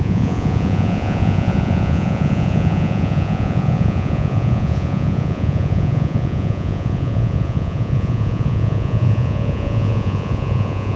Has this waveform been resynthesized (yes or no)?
yes